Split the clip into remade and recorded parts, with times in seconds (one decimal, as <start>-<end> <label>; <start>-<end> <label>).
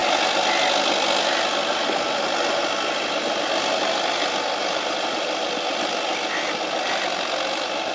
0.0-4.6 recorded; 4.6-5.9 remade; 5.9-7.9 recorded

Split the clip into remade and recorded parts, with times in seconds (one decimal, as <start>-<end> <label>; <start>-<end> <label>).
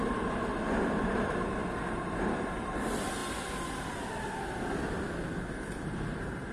0.0-0.5 remade; 0.5-1.1 recorded; 1.1-1.6 remade; 1.6-2.2 recorded; 2.2-3.2 remade; 3.2-5.5 recorded; 5.5-6.5 remade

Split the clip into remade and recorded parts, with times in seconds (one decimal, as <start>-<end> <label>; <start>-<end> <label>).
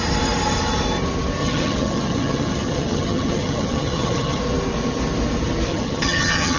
0.0-1.4 recorded; 1.4-4.4 remade; 4.4-5.7 recorded; 5.7-6.6 remade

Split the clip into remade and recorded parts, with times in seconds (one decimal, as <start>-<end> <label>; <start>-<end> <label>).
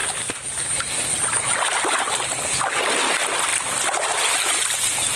0.0-5.2 recorded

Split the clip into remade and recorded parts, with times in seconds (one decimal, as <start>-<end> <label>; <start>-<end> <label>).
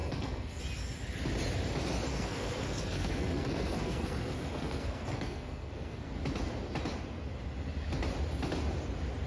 0.0-0.6 remade; 0.6-2.1 recorded; 2.1-6.1 remade; 6.1-9.3 recorded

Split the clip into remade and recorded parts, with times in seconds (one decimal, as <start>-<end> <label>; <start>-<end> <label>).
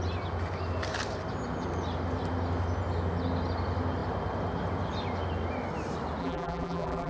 0.0-6.2 recorded; 6.2-7.1 remade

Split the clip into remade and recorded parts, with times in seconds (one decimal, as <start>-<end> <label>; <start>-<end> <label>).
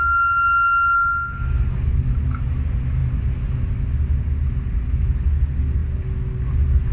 0.0-6.9 recorded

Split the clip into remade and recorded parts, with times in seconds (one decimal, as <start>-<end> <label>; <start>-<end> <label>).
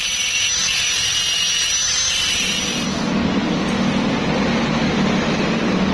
0.0-5.9 recorded